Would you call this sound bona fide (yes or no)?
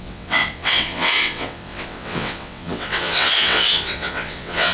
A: no